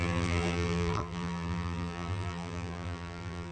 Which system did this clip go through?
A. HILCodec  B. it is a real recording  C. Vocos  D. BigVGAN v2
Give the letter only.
D